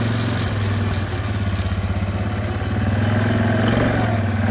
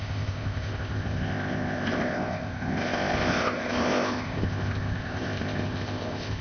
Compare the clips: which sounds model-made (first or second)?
second